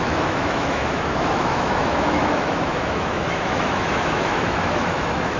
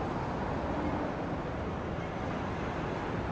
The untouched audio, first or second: second